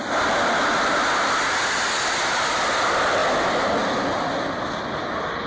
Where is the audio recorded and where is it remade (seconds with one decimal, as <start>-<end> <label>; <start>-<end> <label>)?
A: 0.0-5.5 recorded